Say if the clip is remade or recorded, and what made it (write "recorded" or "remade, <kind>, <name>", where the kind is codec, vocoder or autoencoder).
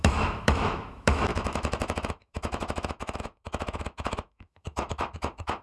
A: remade, autoencoder, DAC-VAE